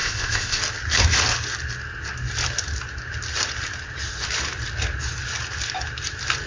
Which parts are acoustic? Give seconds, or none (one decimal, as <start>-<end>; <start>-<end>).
0.6-6.5